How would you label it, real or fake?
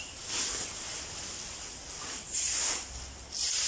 real